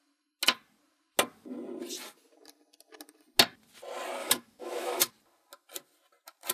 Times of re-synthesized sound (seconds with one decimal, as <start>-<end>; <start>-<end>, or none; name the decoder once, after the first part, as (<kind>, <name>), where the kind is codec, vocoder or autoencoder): 4.2-5.1 (autoencoder, DAC-VAE)